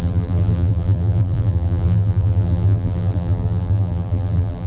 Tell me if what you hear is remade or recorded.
remade